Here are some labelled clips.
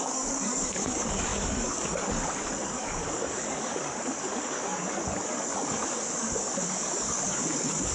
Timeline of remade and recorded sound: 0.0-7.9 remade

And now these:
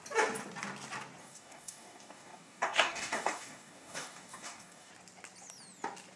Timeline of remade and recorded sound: 0.0-1.2 recorded; 1.2-4.9 remade; 4.9-6.2 recorded

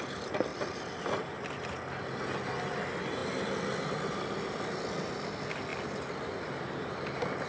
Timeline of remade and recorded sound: 0.0-7.5 recorded

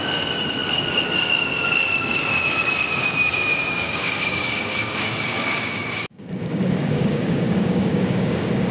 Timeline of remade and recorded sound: 0.0-8.7 remade

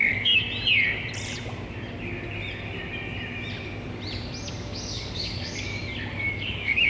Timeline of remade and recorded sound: 0.0-0.4 remade; 0.4-4.5 recorded; 4.5-5.7 remade; 5.7-6.3 recorded; 6.3-6.9 remade

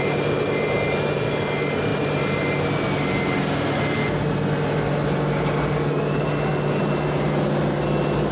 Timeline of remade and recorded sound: 0.0-8.3 recorded